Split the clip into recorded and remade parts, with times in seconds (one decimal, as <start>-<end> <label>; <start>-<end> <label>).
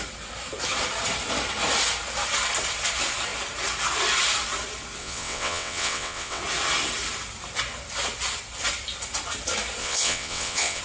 0.0-5.0 recorded; 5.0-6.4 remade; 6.4-9.8 recorded; 9.8-10.8 remade